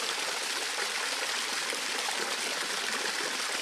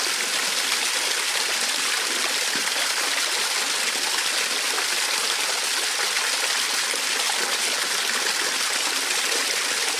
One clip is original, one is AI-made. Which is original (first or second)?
second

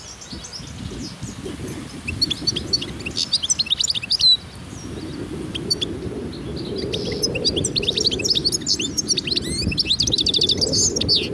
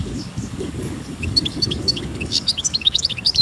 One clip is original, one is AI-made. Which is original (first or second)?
first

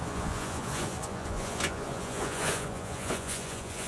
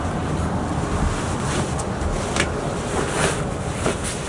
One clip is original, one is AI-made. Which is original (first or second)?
second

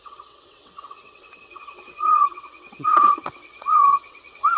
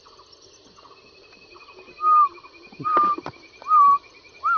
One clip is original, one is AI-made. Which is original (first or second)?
second